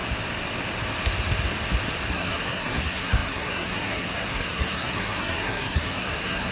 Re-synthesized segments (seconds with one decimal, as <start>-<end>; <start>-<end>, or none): 2.1-6.5